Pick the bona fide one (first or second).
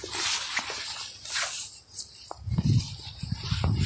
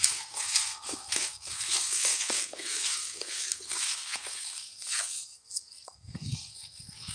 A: first